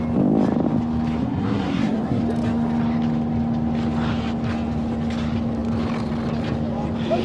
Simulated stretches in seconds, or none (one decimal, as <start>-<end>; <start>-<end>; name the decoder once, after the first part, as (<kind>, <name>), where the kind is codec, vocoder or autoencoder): 1.2-2.2 (codec, SNAC)